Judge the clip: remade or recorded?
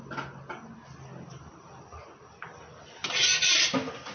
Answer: recorded